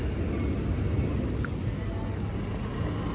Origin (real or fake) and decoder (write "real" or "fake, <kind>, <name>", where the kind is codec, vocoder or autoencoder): real